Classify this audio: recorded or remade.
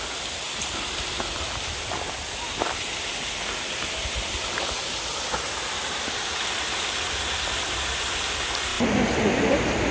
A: recorded